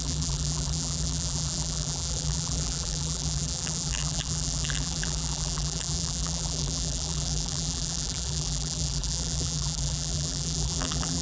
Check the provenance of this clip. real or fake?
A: fake